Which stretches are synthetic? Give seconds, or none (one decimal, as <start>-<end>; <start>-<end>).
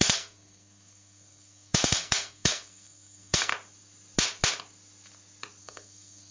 0.0-3.5; 5.6-6.3